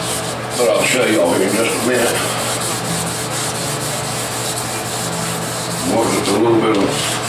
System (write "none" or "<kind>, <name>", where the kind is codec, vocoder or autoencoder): none